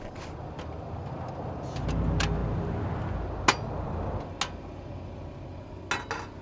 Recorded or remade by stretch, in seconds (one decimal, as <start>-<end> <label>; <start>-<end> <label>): 0.0-6.4 recorded

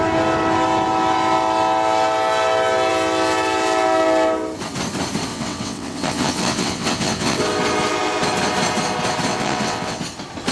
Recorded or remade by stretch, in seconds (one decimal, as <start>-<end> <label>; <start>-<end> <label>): 0.0-5.3 recorded; 5.3-7.4 remade; 7.4-9.3 recorded; 9.3-10.0 remade; 10.0-10.5 recorded

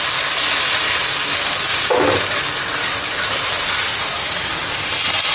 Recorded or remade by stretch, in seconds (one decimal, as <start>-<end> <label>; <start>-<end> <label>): 0.0-1.7 recorded; 1.7-2.4 remade; 2.4-5.3 recorded

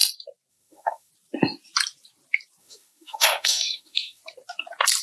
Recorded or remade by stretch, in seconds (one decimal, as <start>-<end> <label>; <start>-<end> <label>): 0.0-0.5 recorded; 0.5-1.1 remade; 1.1-2.6 recorded; 2.6-4.2 remade; 4.2-5.0 recorded

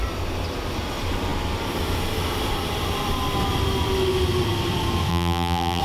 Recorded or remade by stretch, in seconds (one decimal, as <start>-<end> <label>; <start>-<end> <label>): 0.0-5.1 recorded; 5.1-5.8 remade

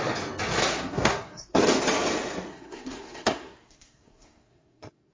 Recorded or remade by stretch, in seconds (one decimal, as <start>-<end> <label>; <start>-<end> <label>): 0.0-0.6 recorded; 0.6-1.6 remade; 1.6-2.5 recorded; 2.5-5.1 remade